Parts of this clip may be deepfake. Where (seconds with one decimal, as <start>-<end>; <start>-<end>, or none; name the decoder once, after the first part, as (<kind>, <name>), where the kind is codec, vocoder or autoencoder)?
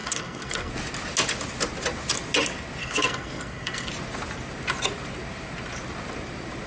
0.0-0.7 (codec, SNAC); 2.8-3.9